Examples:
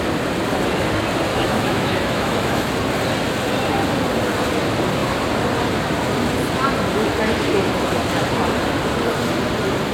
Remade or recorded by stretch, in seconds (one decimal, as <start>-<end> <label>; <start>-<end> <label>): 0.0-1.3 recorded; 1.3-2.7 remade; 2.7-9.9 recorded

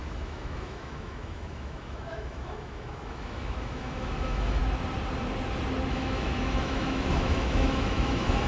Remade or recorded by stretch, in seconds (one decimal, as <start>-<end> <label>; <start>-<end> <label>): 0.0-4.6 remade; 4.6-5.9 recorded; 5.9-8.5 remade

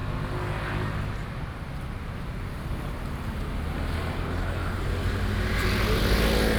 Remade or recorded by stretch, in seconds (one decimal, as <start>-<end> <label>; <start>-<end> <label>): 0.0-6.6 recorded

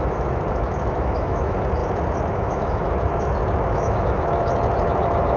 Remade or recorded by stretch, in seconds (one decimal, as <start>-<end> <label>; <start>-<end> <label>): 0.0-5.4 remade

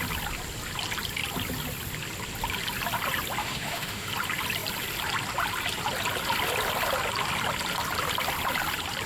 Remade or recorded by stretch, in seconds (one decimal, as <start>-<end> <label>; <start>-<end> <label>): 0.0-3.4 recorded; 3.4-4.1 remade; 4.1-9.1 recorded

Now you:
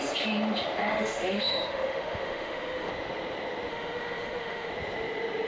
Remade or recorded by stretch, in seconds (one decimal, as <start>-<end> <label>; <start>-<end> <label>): 0.0-0.8 recorded; 0.8-2.9 remade; 2.9-3.7 recorded; 3.7-4.7 remade; 4.7-5.5 recorded

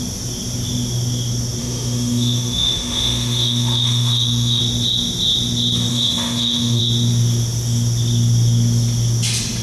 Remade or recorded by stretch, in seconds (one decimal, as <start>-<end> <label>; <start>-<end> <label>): 0.0-1.6 recorded; 1.6-4.6 remade; 4.6-5.9 recorded; 5.9-6.8 remade; 6.8-9.6 recorded

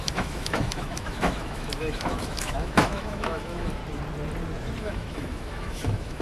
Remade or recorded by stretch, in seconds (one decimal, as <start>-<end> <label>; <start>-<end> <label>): 0.0-3.8 remade; 3.8-4.8 recorded; 4.8-6.2 remade